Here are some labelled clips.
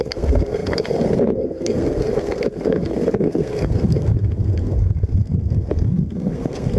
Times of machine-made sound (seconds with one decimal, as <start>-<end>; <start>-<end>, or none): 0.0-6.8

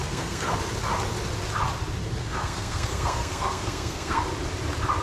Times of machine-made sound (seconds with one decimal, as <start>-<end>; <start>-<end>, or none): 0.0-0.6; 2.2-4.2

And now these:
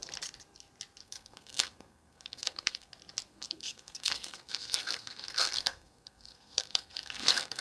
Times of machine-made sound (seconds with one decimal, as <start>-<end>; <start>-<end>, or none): 1.0-2.9; 3.3-7.6

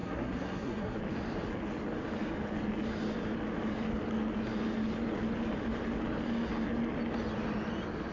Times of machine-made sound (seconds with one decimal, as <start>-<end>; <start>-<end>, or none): 0.0-1.0

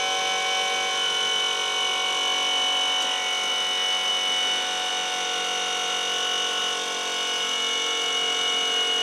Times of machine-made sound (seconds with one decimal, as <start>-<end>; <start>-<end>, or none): none